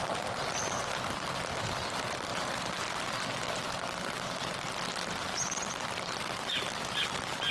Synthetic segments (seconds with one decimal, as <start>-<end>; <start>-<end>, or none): none